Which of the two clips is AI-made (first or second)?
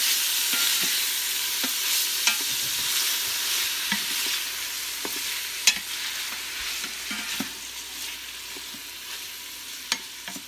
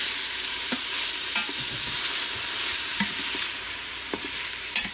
second